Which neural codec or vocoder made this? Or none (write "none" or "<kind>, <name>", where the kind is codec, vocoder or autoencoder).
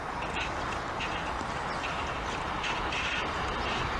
vocoder, BigVGAN v2